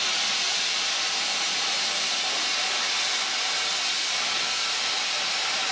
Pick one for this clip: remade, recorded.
recorded